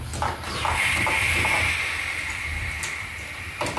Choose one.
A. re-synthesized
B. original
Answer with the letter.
B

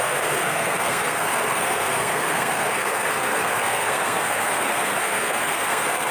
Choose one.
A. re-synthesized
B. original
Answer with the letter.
A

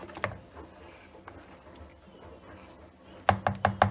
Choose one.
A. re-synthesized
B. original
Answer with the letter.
B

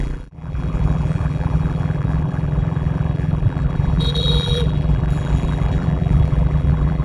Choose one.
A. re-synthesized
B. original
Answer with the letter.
A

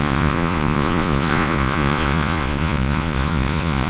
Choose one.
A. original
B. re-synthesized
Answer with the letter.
B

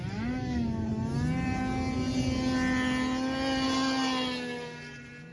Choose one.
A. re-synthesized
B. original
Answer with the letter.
B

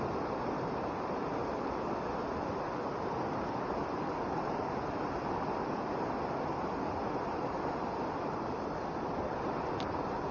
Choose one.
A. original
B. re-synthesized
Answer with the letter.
A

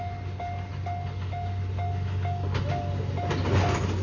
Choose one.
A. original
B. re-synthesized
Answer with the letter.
A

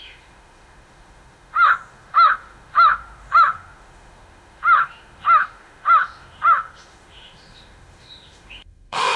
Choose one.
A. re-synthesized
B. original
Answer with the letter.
A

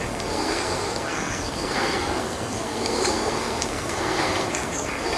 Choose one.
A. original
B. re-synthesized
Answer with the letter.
B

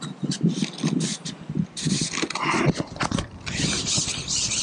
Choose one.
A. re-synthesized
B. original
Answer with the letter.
B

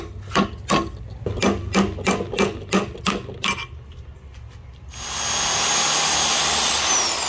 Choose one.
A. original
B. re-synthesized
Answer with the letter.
A